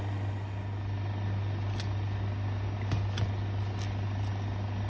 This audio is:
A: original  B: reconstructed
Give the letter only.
A